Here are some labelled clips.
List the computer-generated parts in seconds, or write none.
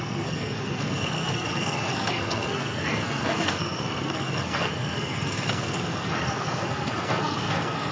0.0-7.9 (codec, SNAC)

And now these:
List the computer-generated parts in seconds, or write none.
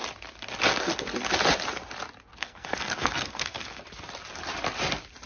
2.3-3.8 (codec, SNAC)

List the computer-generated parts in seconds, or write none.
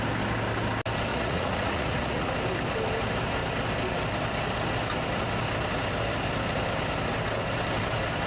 1.1-2.3 (vocoder, Vocos)